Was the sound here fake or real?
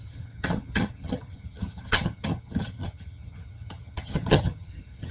fake